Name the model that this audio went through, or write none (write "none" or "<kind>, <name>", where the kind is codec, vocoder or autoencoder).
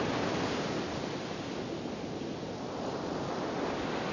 none